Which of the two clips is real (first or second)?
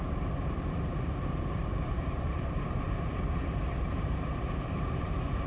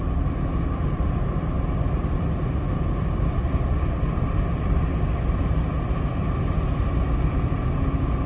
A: second